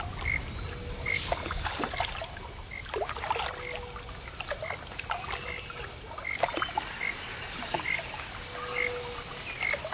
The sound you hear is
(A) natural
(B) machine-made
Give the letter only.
A